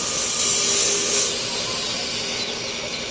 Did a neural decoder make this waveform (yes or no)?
no